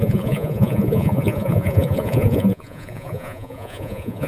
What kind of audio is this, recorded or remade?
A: remade